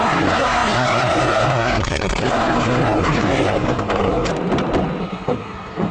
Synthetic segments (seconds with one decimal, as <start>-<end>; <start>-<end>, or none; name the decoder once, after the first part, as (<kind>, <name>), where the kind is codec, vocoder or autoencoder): 0.0-4.3 (codec, SNAC); 5.0-5.9